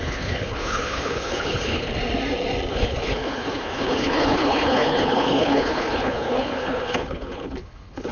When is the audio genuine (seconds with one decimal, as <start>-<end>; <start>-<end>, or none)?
1.9-2.7